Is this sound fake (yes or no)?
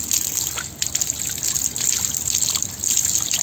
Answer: no